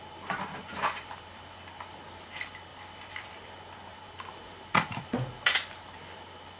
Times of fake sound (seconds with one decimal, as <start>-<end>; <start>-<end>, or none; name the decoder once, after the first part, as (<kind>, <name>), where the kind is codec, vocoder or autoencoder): 0.5-1.4 (vocoder, BigVGAN v2); 2.7-3.3; 3.9-4.7